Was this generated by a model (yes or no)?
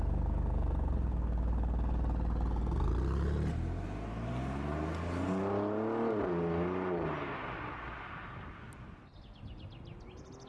no